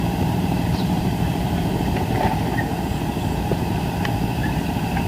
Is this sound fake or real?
fake